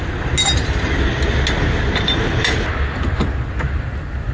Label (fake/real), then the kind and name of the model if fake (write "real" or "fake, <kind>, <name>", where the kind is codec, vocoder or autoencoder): real